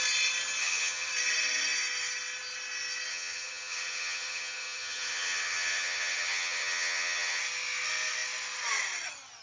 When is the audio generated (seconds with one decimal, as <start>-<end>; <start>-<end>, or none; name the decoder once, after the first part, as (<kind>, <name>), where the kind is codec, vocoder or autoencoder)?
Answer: 0.6-1.1 (vocoder, HiFi-GAN); 3.1-7.4